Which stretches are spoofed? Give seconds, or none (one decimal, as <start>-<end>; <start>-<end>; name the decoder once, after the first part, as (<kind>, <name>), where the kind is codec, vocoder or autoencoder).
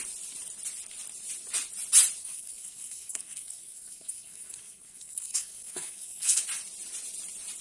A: 2.2-6.4 (codec, SNAC)